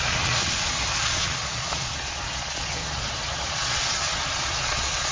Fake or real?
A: fake